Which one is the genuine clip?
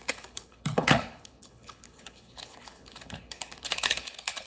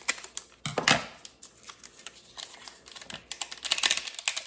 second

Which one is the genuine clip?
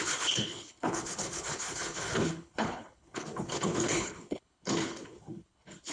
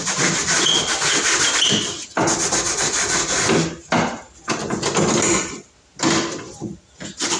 second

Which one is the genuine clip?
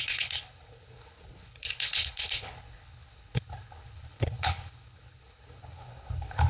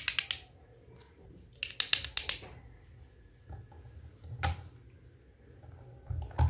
second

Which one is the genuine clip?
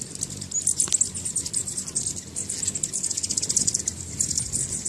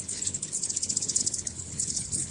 first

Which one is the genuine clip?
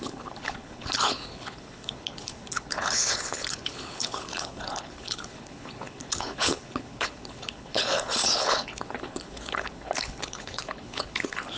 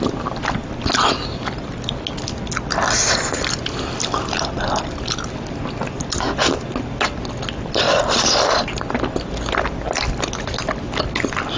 second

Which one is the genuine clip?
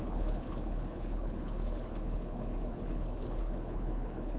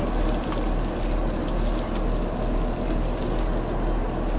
second